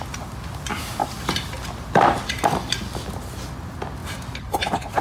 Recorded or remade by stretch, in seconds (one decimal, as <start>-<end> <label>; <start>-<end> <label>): 0.0-1.0 recorded; 1.0-3.3 remade; 3.3-4.0 recorded; 4.0-5.0 remade